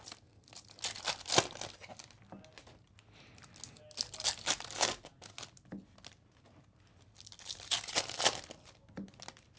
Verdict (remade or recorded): recorded